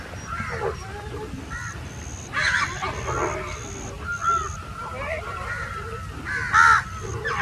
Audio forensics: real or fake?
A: real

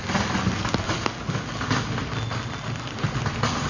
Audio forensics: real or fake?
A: real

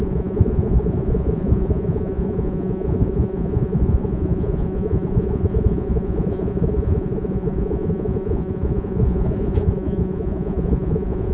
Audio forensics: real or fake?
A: fake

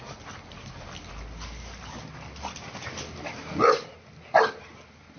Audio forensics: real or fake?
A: real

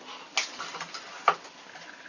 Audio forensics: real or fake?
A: real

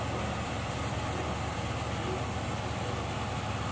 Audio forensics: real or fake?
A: real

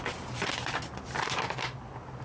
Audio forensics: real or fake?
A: real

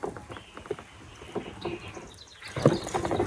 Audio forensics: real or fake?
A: real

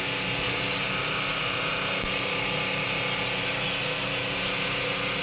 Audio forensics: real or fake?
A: real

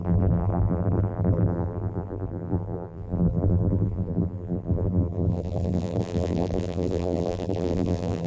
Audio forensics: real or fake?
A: fake